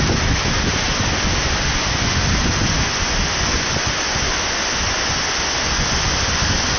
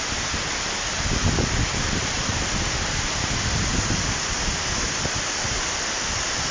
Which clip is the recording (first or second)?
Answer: second